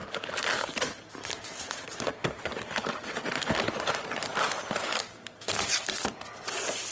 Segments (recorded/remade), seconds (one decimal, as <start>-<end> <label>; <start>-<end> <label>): 0.0-6.9 recorded